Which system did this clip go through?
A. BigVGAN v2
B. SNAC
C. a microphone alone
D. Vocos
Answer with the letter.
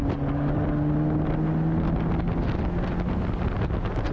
C